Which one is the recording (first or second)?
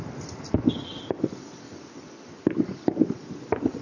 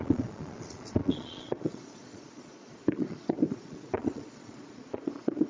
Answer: first